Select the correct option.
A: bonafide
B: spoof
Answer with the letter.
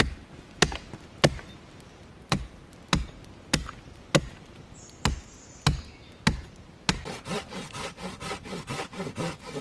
A